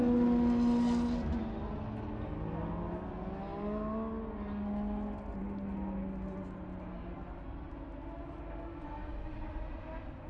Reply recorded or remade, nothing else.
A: recorded